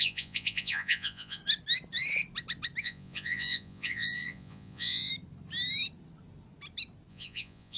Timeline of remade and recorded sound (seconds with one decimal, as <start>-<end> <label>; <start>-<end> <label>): 0.0-1.4 remade; 1.4-2.8 recorded; 2.8-5.1 remade; 5.1-7.1 recorded; 7.1-7.8 remade